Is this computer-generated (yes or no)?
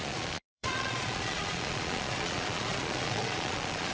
yes